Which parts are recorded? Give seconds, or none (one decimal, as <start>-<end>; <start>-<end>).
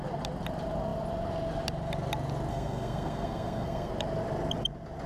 0.0-2.5; 3.9-5.1